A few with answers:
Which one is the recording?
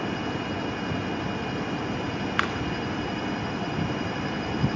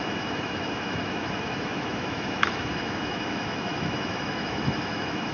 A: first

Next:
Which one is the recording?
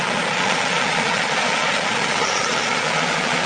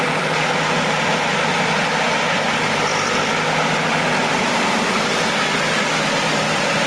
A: second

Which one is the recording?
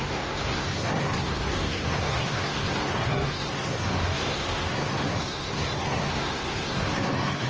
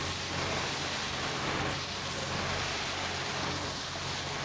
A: second